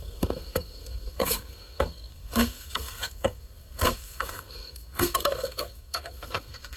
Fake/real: fake